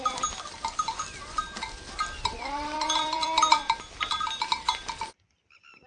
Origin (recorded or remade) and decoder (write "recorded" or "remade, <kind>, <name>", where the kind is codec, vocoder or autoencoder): remade, vocoder, BigVGAN v2